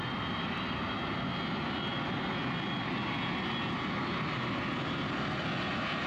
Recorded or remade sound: recorded